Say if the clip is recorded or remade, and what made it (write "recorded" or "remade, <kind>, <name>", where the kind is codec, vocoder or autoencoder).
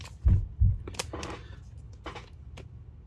recorded